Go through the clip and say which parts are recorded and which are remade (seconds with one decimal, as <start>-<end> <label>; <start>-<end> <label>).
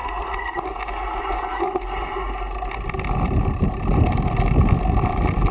0.0-0.6 remade; 0.6-5.5 recorded